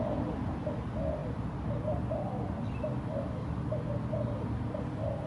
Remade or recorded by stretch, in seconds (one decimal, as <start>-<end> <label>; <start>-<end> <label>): 0.0-5.3 recorded